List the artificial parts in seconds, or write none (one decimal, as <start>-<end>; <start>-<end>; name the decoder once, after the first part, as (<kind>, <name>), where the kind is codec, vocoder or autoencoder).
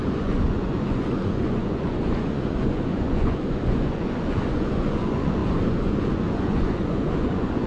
0.0-7.7 (vocoder, Vocos)